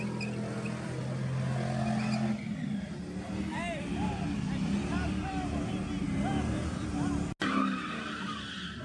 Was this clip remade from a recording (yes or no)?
no